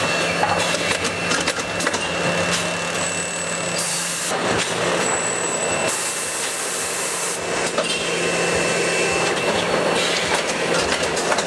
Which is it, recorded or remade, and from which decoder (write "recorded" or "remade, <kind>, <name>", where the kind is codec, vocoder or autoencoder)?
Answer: recorded